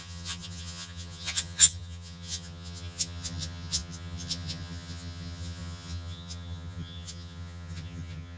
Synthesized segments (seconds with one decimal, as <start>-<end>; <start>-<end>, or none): 0.0-8.4